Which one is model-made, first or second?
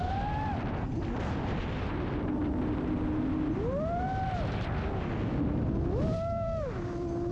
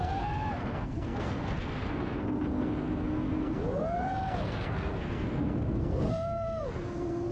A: second